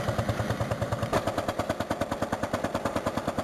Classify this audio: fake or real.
real